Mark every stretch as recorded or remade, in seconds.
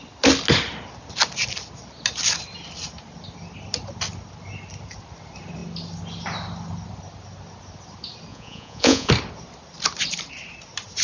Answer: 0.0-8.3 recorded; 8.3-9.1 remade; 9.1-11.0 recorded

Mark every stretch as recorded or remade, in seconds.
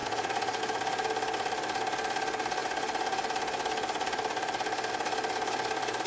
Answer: 0.0-0.6 remade; 0.6-6.1 recorded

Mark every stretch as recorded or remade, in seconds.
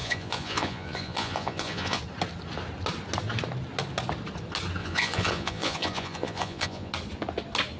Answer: 0.0-2.0 remade; 2.0-4.8 recorded; 4.8-6.9 remade; 6.9-7.8 recorded